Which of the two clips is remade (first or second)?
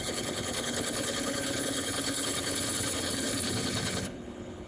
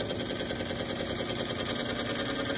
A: first